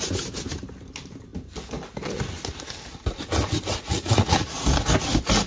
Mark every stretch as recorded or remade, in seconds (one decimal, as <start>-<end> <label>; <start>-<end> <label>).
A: 0.0-3.7 recorded; 3.7-4.5 remade; 4.5-5.5 recorded